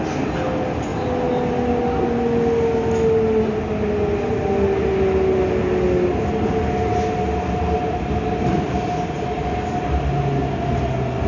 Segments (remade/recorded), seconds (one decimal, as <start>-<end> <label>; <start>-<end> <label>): 0.0-11.3 recorded